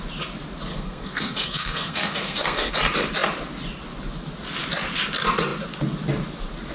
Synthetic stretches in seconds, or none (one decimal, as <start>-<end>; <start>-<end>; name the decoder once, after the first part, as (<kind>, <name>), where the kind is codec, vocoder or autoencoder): 0.7-2.7 (codec, SNAC)